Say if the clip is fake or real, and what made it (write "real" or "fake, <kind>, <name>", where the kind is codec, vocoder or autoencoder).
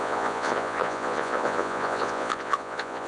fake, vocoder, Vocos